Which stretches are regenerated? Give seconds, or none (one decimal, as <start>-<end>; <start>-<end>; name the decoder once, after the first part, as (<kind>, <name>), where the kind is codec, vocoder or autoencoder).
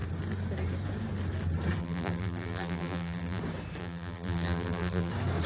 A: 1.8-3.4 (vocoder, BigVGAN v2); 3.8-5.1